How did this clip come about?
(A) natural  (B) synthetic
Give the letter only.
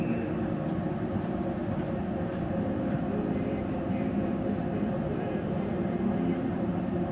B